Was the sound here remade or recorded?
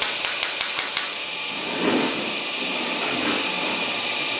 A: recorded